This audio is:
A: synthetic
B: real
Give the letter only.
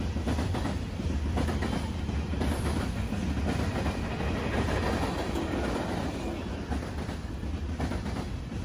B